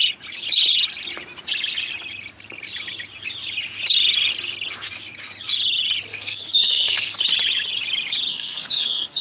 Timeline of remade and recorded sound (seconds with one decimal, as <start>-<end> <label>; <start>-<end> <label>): 0.0-6.1 recorded; 6.1-7.2 remade; 7.2-8.3 recorded; 8.3-9.2 remade